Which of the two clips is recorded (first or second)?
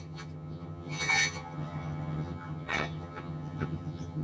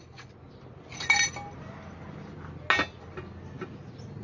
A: second